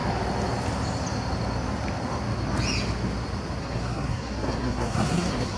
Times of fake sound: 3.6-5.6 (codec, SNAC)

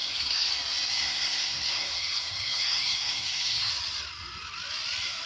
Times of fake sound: 0.0-0.5 (codec, SNAC); 0.9-3.7

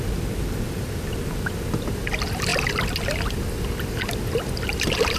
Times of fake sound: none